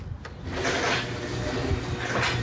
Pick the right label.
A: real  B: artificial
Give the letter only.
A